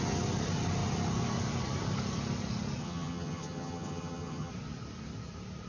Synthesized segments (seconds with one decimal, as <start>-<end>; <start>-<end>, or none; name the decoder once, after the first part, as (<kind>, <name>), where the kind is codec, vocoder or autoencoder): 2.8-4.5 (vocoder, HiFi-GAN)